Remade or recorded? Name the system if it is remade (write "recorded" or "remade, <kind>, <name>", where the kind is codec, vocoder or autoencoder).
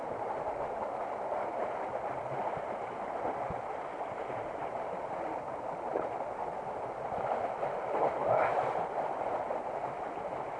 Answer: recorded